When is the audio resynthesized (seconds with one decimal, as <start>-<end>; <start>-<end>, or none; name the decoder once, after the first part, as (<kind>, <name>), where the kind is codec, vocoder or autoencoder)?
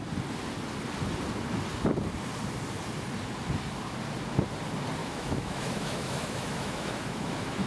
5.0-7.7 (autoencoder, DAC-VAE)